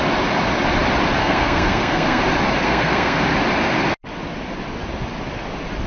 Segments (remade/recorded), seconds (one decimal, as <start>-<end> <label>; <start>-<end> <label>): 0.0-1.2 recorded; 1.2-2.2 remade; 2.2-2.6 recorded; 2.6-3.2 remade; 3.2-5.9 recorded